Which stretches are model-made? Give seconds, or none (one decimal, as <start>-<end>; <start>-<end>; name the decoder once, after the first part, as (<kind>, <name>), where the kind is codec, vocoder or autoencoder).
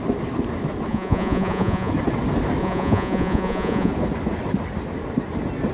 0.9-1.9 (vocoder, Vocos); 2.6-3.9